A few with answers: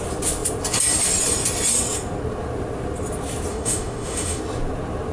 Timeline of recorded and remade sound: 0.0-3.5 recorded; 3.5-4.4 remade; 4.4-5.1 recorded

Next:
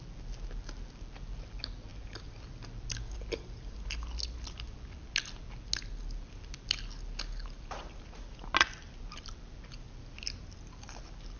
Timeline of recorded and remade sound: 0.0-11.4 recorded

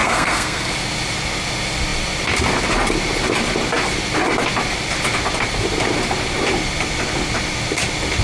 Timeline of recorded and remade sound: 0.0-0.7 remade; 0.7-8.2 recorded

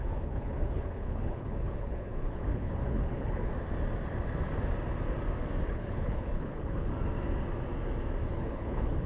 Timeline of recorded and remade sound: 0.0-3.5 remade; 3.5-5.7 recorded; 5.7-6.9 remade; 6.9-8.3 recorded; 8.3-9.1 remade

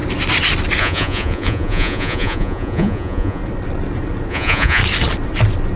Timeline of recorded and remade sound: 0.0-0.8 recorded; 0.8-3.4 remade; 3.4-4.3 recorded; 4.3-4.8 remade; 4.8-5.8 recorded